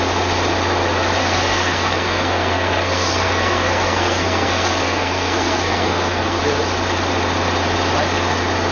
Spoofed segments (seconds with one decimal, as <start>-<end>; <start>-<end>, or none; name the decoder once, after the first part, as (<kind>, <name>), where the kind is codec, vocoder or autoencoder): 1.2-6.4 (codec, SNAC)